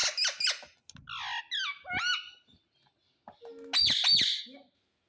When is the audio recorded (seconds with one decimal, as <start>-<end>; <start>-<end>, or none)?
0.0-5.1